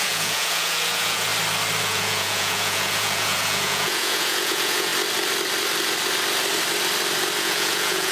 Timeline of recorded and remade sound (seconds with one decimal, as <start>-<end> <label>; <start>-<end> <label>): 0.0-1.3 remade; 1.3-1.8 recorded; 1.8-4.9 remade; 4.9-7.4 recorded; 7.4-8.1 remade